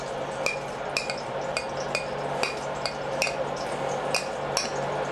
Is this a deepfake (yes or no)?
no